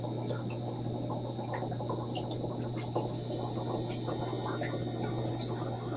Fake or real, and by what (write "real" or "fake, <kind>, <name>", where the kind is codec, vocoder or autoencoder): real